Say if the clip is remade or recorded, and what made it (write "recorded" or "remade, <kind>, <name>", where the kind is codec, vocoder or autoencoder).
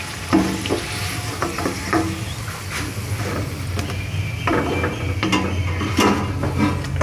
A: recorded